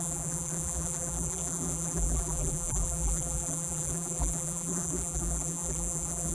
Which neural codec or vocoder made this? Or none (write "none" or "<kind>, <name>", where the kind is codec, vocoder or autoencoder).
vocoder, BigVGAN v2